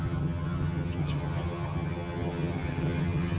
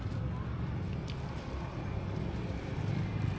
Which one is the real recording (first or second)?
second